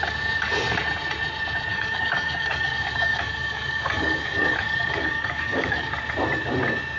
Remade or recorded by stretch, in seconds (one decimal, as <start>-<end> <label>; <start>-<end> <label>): 0.0-1.7 recorded; 1.7-5.9 remade; 5.9-7.0 recorded